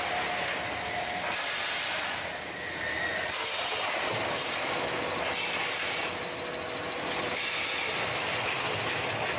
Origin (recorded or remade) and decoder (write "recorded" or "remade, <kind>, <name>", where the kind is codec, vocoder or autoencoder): recorded